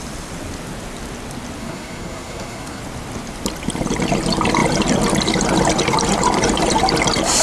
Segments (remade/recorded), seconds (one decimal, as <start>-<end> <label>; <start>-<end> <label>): 0.0-1.6 recorded; 1.6-2.8 remade; 2.8-7.4 recorded